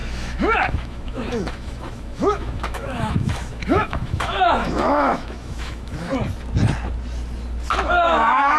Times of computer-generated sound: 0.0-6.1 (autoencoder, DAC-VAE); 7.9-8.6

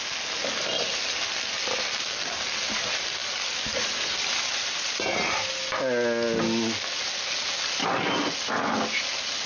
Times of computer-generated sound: none

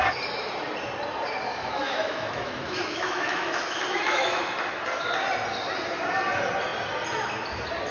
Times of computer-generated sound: 1.5-4.4 (autoencoder, DAC-VAE)

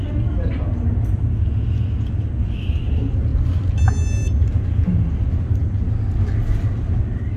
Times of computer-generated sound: none

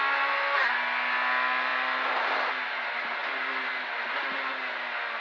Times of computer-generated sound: none

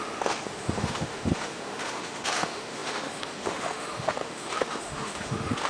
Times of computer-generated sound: 0.0-5.7 (autoencoder, DAC-VAE)

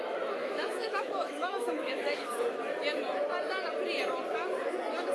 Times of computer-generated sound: 0.4-2.3 (autoencoder, DAC-VAE)